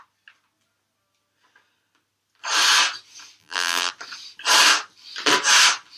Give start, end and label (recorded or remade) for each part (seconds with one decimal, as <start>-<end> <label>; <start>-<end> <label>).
0.0-3.4 recorded; 3.4-3.9 remade; 3.9-6.0 recorded